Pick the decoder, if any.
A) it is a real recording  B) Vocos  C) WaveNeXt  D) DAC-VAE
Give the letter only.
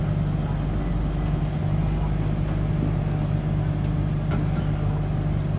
A